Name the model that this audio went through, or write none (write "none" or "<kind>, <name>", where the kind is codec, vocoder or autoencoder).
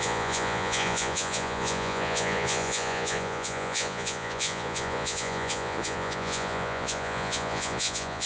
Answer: vocoder, Vocos